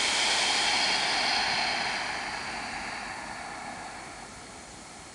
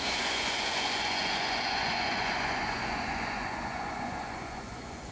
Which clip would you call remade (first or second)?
second